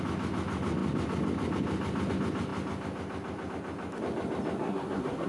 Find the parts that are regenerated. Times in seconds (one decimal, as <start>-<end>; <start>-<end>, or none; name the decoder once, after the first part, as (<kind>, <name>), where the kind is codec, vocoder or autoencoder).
4.6-5.3 (codec, SNAC)